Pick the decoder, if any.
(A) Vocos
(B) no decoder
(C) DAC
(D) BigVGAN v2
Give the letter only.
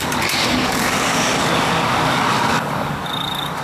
C